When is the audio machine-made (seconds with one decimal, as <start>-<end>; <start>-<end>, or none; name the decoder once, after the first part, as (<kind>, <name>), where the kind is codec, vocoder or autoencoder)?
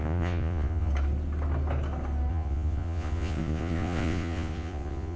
0.0-0.9 (vocoder, Vocos); 2.3-5.2